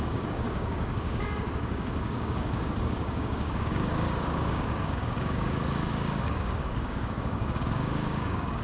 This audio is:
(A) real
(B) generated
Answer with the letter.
B